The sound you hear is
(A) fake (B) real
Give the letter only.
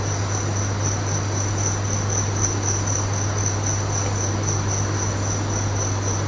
B